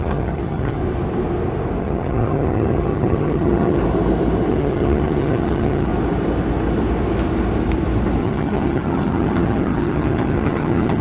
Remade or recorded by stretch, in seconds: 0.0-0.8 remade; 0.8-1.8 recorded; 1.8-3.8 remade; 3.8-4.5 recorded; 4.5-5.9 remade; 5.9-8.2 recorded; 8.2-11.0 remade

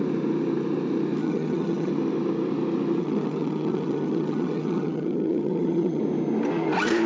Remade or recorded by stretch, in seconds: 0.0-1.2 recorded; 1.2-1.9 remade; 1.9-3.0 recorded; 3.0-6.0 remade; 6.0-7.1 recorded

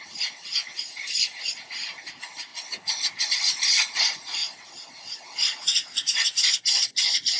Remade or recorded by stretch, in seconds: 0.0-7.4 recorded

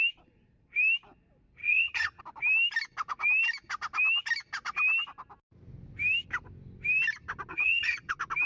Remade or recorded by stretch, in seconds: 0.0-1.6 recorded; 1.6-2.2 remade; 2.2-7.5 recorded; 7.5-8.1 remade; 8.1-8.5 recorded

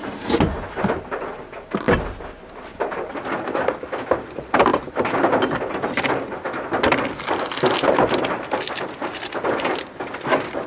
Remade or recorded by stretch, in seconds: 0.0-10.7 recorded

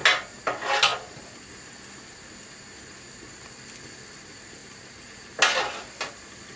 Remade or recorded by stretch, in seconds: 0.0-6.6 recorded

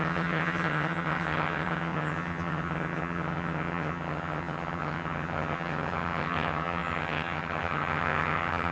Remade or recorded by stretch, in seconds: 0.0-8.7 remade

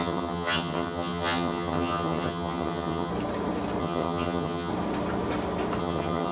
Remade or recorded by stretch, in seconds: 0.0-3.1 remade; 3.1-3.8 recorded; 3.8-4.7 remade; 4.7-5.8 recorded; 5.8-6.3 remade